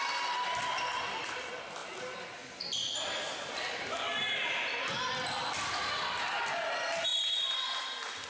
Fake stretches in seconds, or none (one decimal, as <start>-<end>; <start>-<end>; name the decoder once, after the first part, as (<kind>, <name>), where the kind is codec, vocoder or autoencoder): none